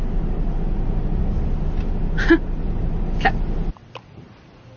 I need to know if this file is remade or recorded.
recorded